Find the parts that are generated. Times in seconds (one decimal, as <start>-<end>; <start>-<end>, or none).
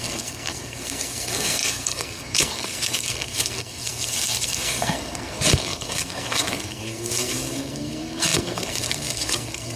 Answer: 0.0-9.8